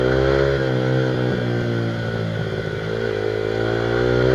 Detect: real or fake real